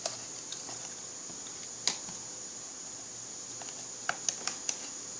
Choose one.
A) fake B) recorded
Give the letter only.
B